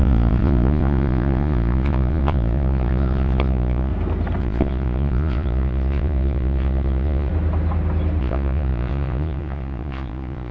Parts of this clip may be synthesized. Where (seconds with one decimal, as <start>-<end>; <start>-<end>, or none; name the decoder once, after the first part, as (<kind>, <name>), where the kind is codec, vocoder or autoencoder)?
0.0-3.9 (vocoder, Vocos); 4.4-7.3; 8.2-10.5